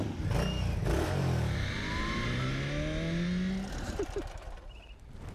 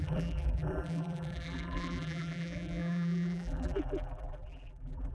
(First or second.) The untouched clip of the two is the first